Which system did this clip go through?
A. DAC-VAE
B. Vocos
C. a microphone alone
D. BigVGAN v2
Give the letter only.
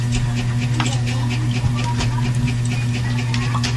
C